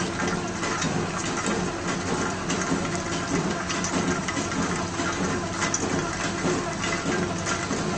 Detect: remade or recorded recorded